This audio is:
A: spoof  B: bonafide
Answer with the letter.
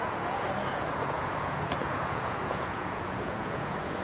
A